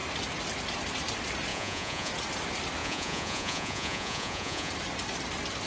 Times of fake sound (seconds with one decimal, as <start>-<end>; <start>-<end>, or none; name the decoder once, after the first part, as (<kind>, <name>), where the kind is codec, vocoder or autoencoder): 1.5-2.1 (vocoder, Vocos); 2.8-4.7